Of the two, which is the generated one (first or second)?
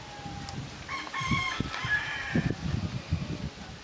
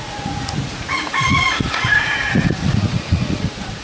second